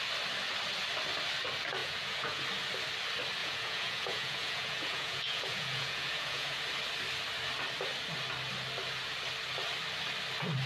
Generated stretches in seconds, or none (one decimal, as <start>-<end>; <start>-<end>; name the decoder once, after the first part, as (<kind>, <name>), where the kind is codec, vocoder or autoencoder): 1.8-2.4 (vocoder, Vocos); 3.4-6.6